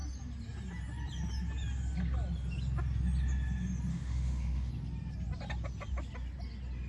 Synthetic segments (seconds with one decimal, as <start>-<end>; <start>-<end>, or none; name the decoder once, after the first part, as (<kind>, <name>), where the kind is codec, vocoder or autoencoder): 3.9-4.7 (autoencoder, DAC-VAE)